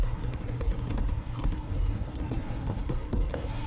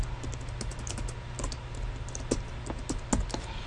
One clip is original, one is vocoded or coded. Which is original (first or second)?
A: second